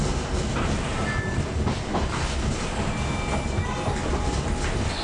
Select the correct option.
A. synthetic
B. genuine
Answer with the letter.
B